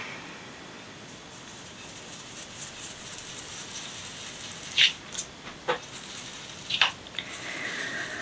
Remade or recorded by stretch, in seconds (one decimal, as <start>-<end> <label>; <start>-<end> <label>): 0.0-8.2 recorded